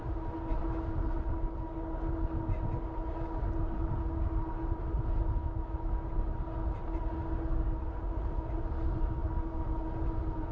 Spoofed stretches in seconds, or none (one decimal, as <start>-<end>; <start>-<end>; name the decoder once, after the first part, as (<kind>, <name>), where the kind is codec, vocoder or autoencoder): 5.4-5.9 (autoencoder, DAC-VAE)